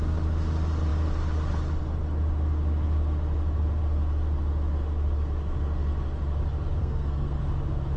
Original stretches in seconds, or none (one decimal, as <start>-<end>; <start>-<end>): 0.0-6.8; 7.4-8.0